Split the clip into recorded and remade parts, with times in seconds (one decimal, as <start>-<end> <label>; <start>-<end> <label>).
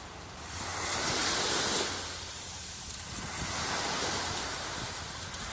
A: 0.0-5.5 recorded